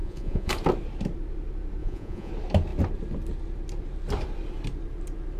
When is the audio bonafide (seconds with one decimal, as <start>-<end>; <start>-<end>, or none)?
0.5-1.8; 2.3-5.4